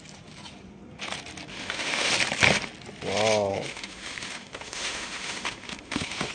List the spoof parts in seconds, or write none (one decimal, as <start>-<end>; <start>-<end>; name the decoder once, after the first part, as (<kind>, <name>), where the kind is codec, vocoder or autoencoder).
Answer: 1.5-2.1 (autoencoder, DAC-VAE); 3.5-6.3